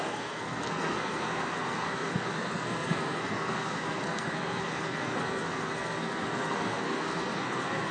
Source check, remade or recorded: remade